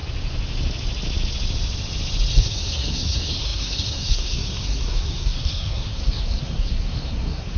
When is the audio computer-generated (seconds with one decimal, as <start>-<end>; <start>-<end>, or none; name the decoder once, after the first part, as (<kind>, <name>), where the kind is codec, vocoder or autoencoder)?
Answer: 2.3-7.6 (codec, SNAC)